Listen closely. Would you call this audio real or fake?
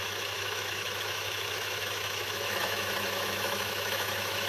fake